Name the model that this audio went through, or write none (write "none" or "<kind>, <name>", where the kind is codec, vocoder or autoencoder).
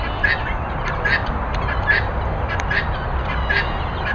none